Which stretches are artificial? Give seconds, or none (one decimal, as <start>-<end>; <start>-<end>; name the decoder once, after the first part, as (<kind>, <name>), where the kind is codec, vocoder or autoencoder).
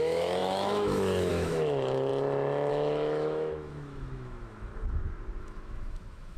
0.0-2.1 (autoencoder, DAC-VAE); 2.7-4.7; 5.4-6.4